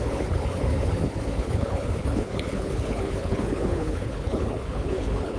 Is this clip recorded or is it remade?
remade